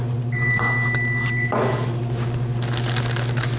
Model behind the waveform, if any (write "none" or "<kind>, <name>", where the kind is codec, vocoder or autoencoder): none